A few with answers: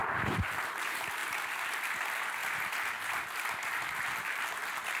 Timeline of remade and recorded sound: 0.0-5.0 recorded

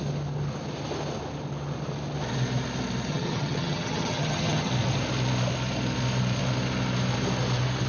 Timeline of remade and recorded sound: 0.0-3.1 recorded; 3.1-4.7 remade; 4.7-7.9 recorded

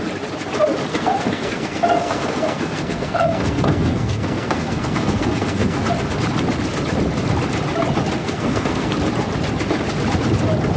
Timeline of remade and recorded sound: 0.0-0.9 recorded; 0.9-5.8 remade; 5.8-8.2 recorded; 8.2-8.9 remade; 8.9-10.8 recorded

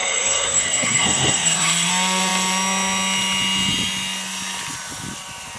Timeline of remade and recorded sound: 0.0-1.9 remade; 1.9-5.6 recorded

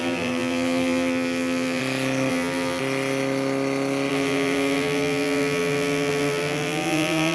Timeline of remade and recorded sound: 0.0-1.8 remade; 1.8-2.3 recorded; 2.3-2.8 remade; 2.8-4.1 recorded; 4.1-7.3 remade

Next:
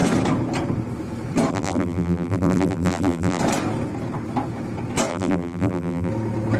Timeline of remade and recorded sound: 0.0-1.5 recorded; 1.5-3.4 remade; 3.4-5.1 recorded; 5.1-6.1 remade; 6.1-6.6 recorded